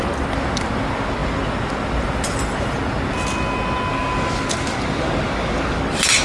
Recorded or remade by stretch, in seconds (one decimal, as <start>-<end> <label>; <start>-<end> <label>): 0.0-3.9 recorded; 3.9-5.8 remade; 5.8-6.2 recorded